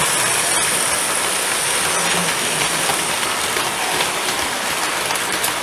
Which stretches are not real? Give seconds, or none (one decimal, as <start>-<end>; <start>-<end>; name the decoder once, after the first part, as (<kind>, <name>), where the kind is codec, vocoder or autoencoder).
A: none

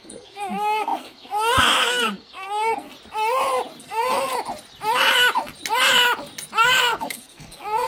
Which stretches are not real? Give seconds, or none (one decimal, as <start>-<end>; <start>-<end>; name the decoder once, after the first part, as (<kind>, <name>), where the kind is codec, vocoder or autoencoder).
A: 0.0-2.9 (codec, SNAC); 3.8-4.3; 6.8-7.9

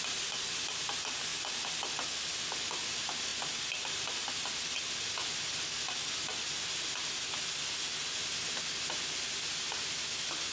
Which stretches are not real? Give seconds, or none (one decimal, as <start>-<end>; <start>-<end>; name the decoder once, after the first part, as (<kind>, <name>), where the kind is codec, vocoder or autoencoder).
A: none